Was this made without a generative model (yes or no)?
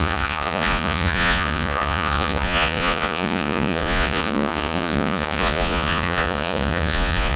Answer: no